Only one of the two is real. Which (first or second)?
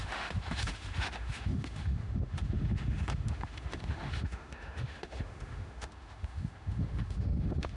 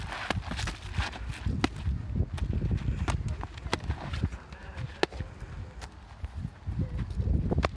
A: second